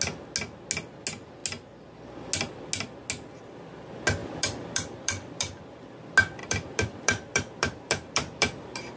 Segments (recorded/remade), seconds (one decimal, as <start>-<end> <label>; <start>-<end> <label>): 0.0-4.2 recorded; 4.2-5.8 remade; 5.8-6.4 recorded; 6.4-9.0 remade

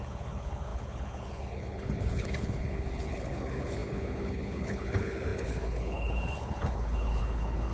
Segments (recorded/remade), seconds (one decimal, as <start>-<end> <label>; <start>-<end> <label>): 0.0-7.7 remade

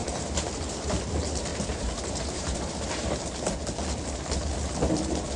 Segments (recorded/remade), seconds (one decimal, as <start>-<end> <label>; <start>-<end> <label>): 0.0-1.0 remade; 1.0-1.5 recorded; 1.5-3.1 remade; 3.1-5.4 recorded

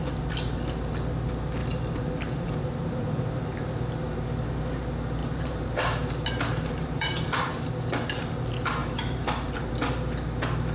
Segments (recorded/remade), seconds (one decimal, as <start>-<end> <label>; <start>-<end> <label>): 0.0-1.6 recorded; 1.6-3.9 remade; 3.9-5.2 recorded; 5.2-7.6 remade; 7.6-8.8 recorded; 8.8-9.7 remade; 9.7-10.7 recorded

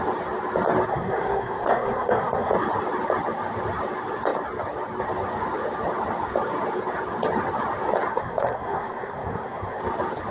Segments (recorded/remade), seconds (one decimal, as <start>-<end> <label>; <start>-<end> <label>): 0.0-0.9 recorded; 0.9-2.5 remade; 2.5-8.1 recorded; 8.1-9.8 remade; 9.8-10.3 recorded